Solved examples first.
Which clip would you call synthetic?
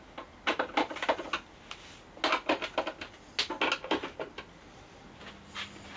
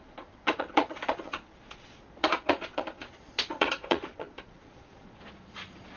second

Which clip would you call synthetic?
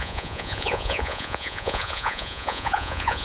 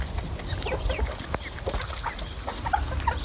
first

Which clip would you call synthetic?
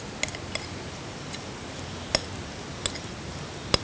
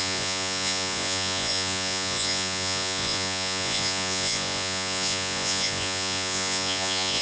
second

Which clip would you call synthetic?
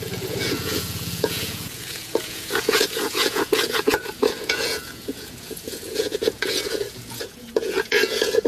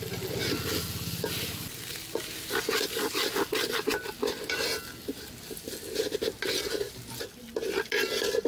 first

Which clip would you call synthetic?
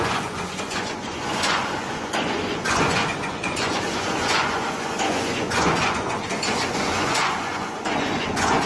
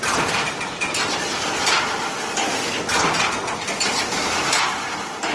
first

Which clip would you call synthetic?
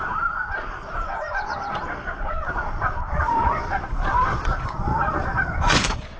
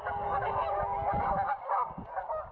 first